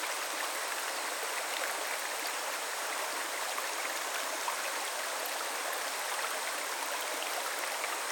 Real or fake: real